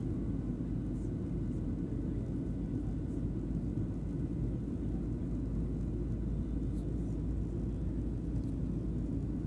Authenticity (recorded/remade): recorded